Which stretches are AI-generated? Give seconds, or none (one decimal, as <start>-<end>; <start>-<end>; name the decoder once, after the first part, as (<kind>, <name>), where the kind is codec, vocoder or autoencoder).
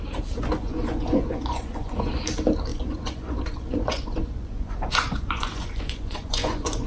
0.5-2.1 (vocoder, Vocos); 2.7-6.9